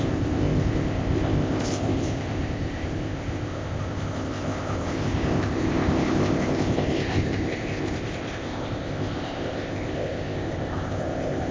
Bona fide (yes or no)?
no